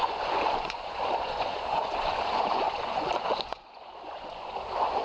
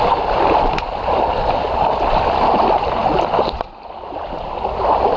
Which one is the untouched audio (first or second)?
second